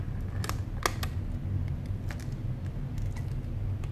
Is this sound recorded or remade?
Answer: recorded